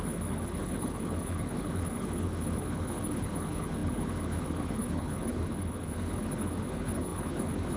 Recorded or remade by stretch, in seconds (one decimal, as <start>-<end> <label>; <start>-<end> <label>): 0.0-7.8 remade